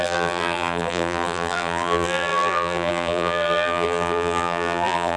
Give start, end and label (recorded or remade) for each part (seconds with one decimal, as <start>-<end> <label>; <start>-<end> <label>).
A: 0.0-5.2 remade